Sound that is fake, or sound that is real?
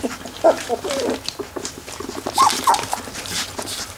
real